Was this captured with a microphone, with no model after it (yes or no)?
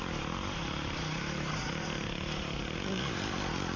yes